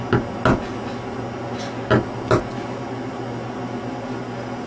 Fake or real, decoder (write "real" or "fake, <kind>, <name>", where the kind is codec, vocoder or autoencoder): real